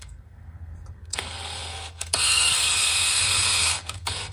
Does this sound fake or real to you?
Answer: fake